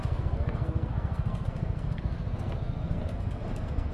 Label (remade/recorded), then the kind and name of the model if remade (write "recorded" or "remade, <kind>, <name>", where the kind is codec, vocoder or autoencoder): remade, codec, SNAC